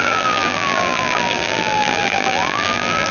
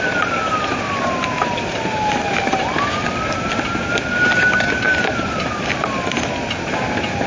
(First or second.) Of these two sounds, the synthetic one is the first